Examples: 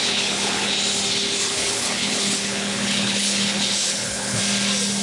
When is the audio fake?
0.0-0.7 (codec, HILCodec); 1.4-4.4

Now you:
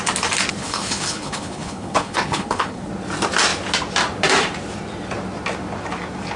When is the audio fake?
0.6-2.9 (codec, HILCodec)

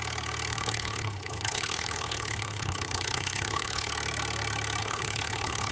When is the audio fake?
0.5-3.9 (codec, HILCodec); 4.8-5.7

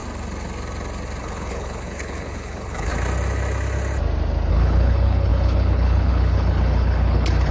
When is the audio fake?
1.2-2.9 (codec, HILCodec); 4.5-7.5

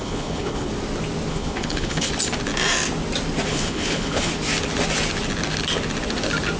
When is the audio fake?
0.0-0.7 (codec, HILCodec); 1.3-2.1; 3.5-4.3

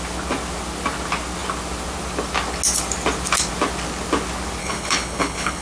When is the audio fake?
4.6-5.6 (codec, HILCodec)

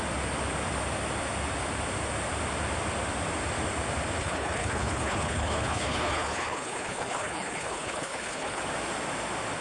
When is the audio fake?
4.2-8.6 (codec, HILCodec)